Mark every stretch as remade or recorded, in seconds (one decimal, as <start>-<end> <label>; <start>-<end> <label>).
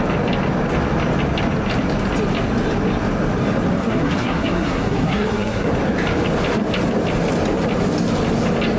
0.0-3.8 recorded; 3.8-5.7 remade; 5.7-8.8 recorded